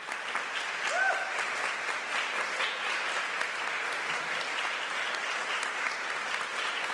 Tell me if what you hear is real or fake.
real